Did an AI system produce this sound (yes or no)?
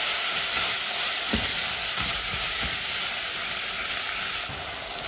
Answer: yes